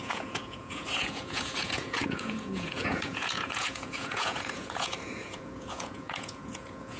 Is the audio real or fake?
fake